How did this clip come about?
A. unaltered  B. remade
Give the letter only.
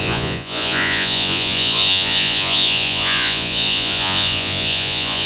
B